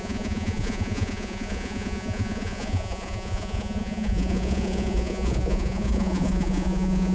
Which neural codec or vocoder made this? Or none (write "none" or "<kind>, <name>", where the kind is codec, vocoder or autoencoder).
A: vocoder, Vocos